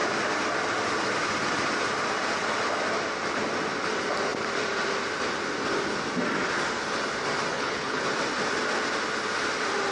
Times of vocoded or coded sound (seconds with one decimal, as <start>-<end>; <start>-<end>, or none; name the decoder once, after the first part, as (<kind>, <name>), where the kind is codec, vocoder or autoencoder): 7.5-8.0 (codec, HILCodec)